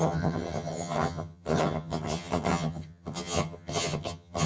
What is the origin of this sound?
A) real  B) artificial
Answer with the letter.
B